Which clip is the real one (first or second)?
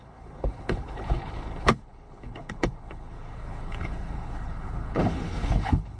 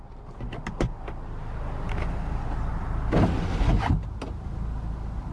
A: second